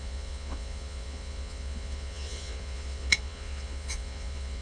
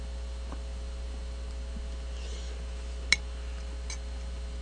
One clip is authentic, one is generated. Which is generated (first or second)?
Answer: first